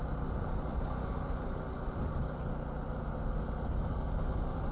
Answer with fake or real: real